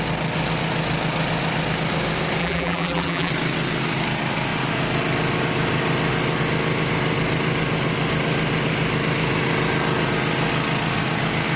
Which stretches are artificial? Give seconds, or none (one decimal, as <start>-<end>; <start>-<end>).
2.4-3.3